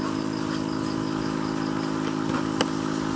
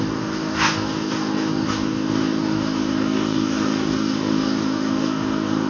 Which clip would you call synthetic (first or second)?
second